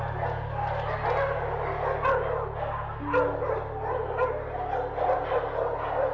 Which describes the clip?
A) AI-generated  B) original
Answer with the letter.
B